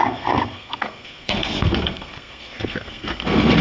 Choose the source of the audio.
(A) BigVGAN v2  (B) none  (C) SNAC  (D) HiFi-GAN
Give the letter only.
C